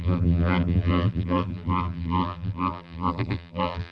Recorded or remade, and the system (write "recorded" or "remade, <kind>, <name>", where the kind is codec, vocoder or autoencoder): remade, vocoder, BigVGAN v2